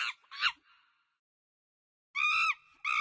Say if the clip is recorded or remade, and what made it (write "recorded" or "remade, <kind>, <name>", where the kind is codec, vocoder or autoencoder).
recorded